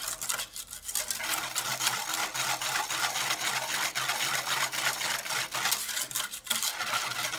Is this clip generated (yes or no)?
no